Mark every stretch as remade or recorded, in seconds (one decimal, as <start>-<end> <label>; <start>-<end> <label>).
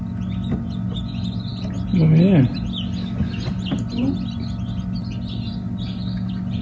0.0-6.6 recorded